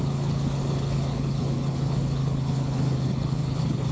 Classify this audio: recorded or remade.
remade